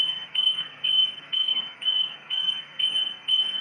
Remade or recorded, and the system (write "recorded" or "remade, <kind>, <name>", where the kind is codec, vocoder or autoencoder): remade, codec, SNAC